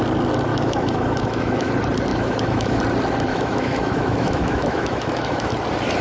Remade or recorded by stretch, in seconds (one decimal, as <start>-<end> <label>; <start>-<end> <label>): 0.0-0.5 recorded; 0.5-1.7 remade; 1.7-2.1 recorded; 2.1-2.8 remade; 2.8-3.3 recorded; 3.3-5.5 remade; 5.5-6.0 recorded